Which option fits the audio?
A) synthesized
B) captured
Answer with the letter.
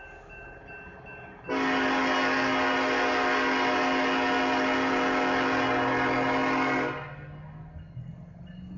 B